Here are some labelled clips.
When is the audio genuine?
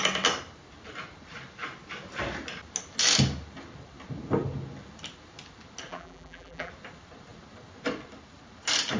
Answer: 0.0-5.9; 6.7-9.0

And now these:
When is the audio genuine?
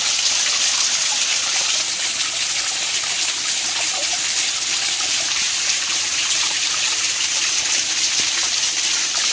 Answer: 0.0-5.1; 6.8-9.3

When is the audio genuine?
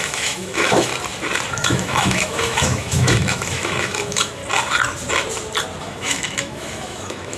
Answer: 0.9-1.5; 4.4-5.8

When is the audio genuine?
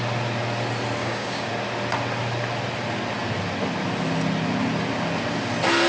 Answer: 0.0-1.0; 1.5-5.9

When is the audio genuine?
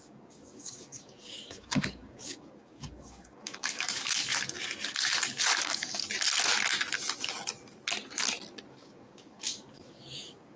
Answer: 4.3-5.5; 6.0-8.7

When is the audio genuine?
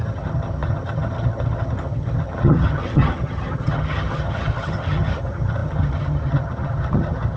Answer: none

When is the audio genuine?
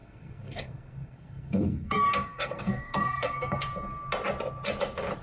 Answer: 3.6-5.2